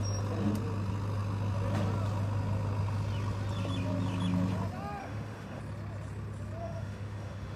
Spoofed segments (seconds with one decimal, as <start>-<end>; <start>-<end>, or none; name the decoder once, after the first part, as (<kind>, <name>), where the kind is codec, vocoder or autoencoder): 5.0-5.6 (autoencoder, DAC-VAE); 6.6-7.6